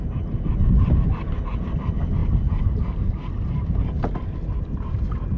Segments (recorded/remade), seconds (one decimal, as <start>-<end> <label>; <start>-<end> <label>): 0.0-5.4 recorded